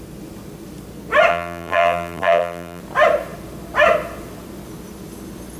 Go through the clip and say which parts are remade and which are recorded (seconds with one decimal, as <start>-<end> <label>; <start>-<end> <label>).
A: 0.0-1.3 recorded; 1.3-2.8 remade; 2.8-5.6 recorded